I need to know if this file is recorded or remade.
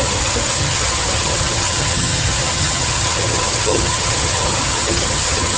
remade